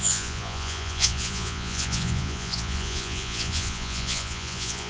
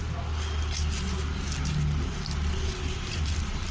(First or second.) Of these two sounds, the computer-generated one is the first